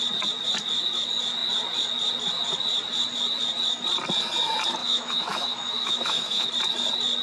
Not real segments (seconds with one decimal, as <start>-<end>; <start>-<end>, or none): 4.8-6.5